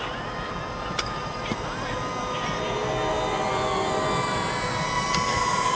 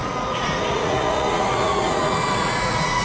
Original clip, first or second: first